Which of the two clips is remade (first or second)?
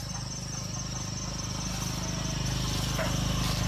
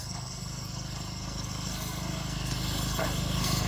second